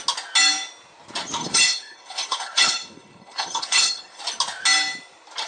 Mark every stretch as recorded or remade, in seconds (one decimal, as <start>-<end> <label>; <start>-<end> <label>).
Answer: 0.0-1.4 recorded; 1.4-4.2 remade; 4.2-5.5 recorded

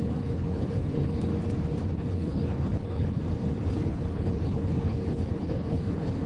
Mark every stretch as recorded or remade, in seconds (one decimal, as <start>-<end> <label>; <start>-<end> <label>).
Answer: 0.0-1.3 remade; 1.3-1.9 recorded; 1.9-3.2 remade; 3.2-3.7 recorded; 3.7-6.3 remade

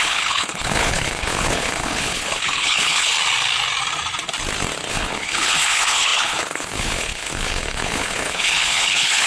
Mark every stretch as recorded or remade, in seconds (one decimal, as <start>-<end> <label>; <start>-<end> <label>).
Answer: 0.0-3.1 remade; 3.1-4.9 recorded; 4.9-9.3 remade